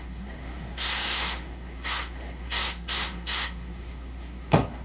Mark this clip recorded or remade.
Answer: remade